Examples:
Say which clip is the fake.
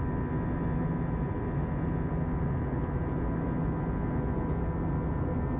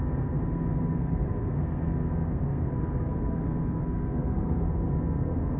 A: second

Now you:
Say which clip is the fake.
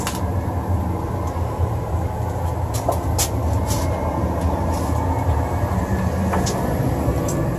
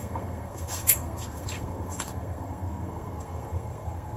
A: second